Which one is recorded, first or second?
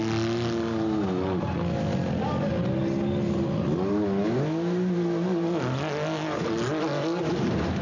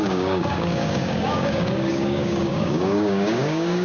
first